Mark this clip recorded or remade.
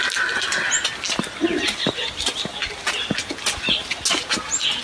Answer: recorded